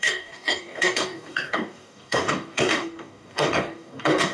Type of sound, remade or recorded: remade